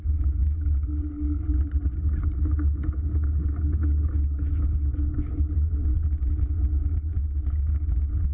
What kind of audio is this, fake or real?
real